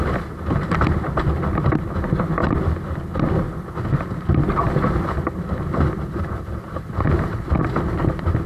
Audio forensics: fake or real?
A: real